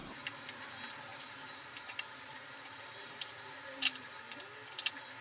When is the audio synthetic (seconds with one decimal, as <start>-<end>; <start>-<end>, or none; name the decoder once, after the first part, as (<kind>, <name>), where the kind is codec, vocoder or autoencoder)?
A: 0.0-0.7 (vocoder, BigVGAN v2); 1.1-4.2